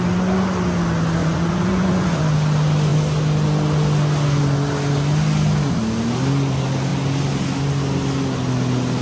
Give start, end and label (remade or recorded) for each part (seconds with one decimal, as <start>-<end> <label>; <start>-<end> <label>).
0.0-1.2 recorded; 1.2-2.2 remade; 2.2-9.0 recorded